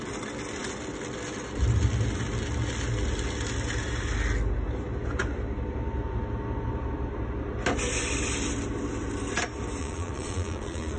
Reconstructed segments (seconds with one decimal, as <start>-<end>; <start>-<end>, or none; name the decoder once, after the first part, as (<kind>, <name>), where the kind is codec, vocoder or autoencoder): 9.8-11.0 (vocoder, Vocos)